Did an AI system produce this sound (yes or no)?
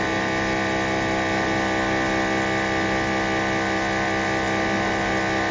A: no